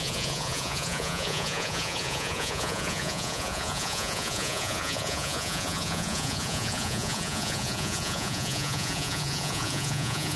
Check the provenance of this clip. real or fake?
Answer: fake